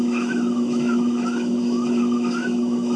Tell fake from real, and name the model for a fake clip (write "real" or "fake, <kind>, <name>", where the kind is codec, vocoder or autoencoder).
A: fake, autoencoder, DAC-VAE